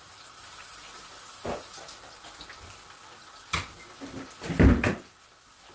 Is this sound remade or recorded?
recorded